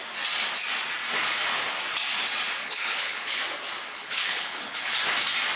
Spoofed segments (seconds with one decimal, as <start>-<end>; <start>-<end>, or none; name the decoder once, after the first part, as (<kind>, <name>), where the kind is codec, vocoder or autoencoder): 2.6-3.4 (codec, HILCodec); 3.9-5.0